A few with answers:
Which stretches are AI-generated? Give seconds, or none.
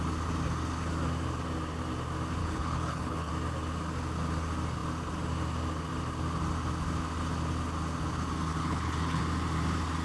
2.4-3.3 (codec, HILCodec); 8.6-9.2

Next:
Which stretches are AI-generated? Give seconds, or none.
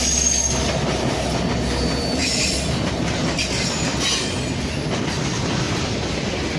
none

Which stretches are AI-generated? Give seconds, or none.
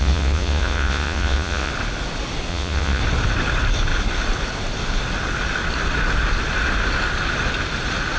0.0-1.7 (vocoder, Vocos); 2.5-3.0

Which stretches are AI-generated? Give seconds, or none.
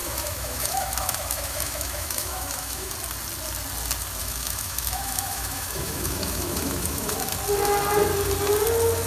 0.0-2.9 (autoencoder, DAC-VAE); 4.2-7.3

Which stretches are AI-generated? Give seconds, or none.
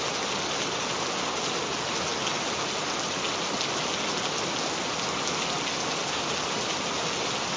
none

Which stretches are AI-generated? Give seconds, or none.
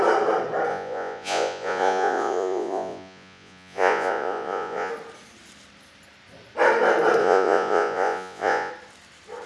0.7-4.9 (vocoder, Vocos); 7.2-8.7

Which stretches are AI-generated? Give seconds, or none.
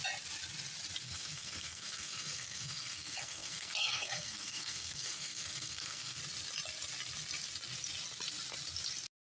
1.0-6.2 (codec, SNAC)